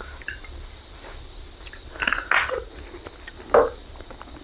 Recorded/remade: recorded